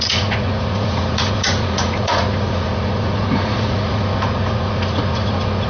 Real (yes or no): no